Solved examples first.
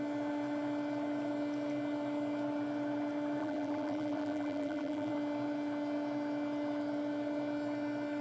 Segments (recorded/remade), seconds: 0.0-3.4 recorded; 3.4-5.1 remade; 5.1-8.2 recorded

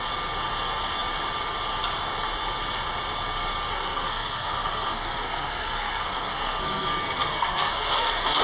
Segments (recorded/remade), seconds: 0.0-3.7 recorded; 3.7-8.4 remade

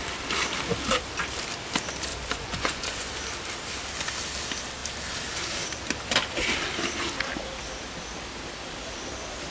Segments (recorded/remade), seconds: 0.0-2.1 recorded; 2.1-3.1 remade; 3.1-9.5 recorded

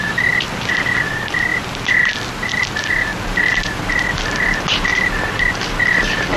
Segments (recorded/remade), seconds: 0.0-6.4 recorded

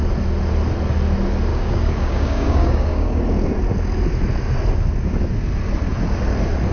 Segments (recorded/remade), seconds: 0.0-1.5 recorded; 1.5-3.2 remade; 3.2-6.7 recorded

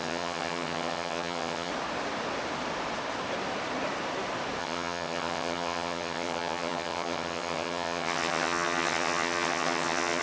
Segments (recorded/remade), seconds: 0.0-1.7 remade; 1.7-4.6 recorded; 4.6-10.2 remade

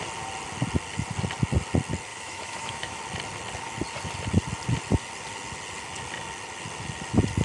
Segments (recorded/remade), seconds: 0.0-2.1 recorded; 2.1-3.0 remade; 3.0-7.4 recorded

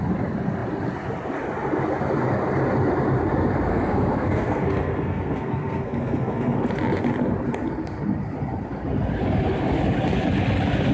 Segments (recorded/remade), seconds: 0.0-3.7 recorded; 3.7-6.7 remade; 6.7-10.9 recorded